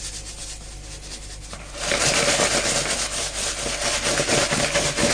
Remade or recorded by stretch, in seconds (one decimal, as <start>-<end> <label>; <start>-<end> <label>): 0.0-5.1 recorded